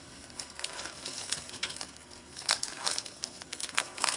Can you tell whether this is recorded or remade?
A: remade